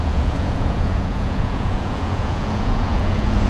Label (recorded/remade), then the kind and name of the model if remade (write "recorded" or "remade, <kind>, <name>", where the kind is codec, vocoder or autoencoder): remade, vocoder, Vocos